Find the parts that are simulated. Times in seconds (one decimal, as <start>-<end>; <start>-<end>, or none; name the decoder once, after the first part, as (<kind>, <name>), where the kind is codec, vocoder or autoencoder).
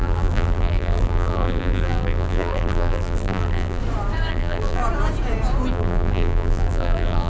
0.0-3.8 (vocoder, BigVGAN v2); 4.3-4.8; 5.7-7.3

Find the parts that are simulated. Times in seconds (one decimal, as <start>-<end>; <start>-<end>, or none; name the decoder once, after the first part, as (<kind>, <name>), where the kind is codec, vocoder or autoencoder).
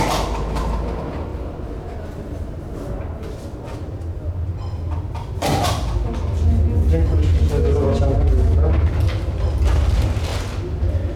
none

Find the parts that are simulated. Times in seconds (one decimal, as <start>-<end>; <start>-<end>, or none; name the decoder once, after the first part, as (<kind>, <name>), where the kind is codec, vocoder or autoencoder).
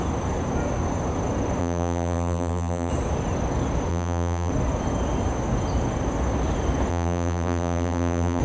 1.6-2.9 (vocoder, BigVGAN v2); 3.9-4.5; 6.9-8.4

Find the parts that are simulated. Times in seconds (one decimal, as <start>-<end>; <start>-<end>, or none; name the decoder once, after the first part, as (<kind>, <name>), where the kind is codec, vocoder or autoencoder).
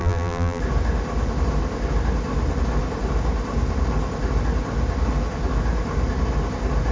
0.0-0.6 (vocoder, BigVGAN v2)